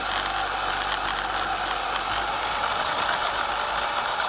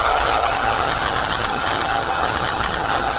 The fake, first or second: second